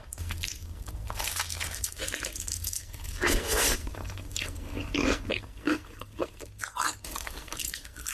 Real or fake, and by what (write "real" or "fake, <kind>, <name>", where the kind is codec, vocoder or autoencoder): fake, codec, SNAC